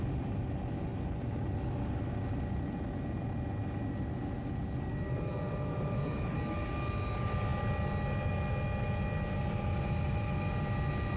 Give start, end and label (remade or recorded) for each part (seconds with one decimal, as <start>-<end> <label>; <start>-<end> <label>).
0.0-11.2 recorded